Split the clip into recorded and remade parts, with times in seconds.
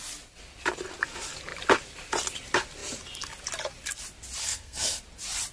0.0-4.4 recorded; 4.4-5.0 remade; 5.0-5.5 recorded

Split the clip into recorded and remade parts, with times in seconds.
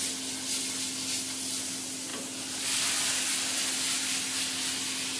0.0-5.2 recorded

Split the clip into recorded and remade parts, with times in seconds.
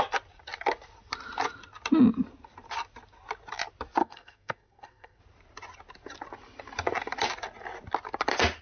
0.0-4.0 recorded; 4.0-5.2 remade; 5.2-8.6 recorded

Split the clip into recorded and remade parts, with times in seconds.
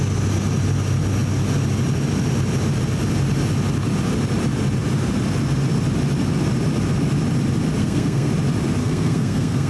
0.0-7.8 recorded; 7.8-8.3 remade; 8.3-8.8 recorded; 8.8-9.7 remade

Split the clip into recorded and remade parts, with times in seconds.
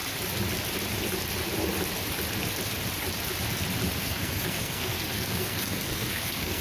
0.0-4.0 recorded; 4.0-6.6 remade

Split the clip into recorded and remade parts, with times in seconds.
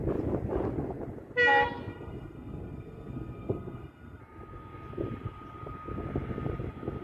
0.0-1.9 recorded; 1.9-4.2 remade; 4.2-7.0 recorded